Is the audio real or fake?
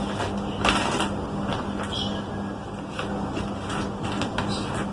real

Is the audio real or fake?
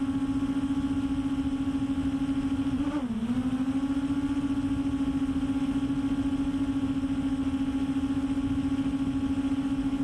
real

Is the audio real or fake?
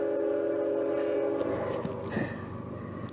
real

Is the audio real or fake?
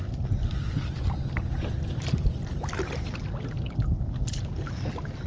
real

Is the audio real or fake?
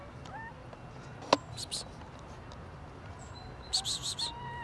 real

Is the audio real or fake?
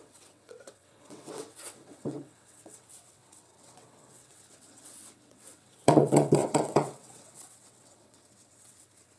fake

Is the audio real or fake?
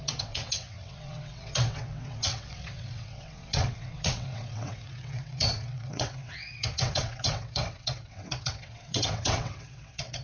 fake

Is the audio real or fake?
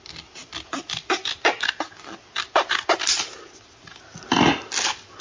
real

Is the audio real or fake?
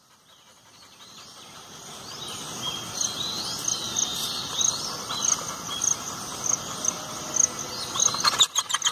real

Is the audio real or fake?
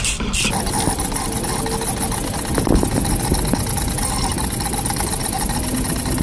real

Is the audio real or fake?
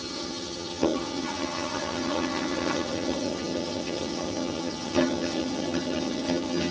fake